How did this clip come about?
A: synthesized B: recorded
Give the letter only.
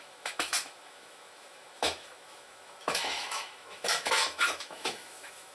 A